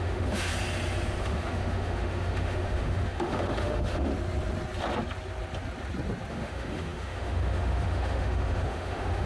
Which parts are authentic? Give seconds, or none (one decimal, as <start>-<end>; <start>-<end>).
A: 0.5-1.2; 4.1-6.3